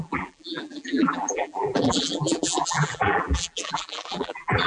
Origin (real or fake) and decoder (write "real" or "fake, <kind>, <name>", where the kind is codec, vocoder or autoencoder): fake, vocoder, BigVGAN v2